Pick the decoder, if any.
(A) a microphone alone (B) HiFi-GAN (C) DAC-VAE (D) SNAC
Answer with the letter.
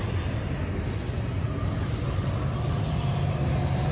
A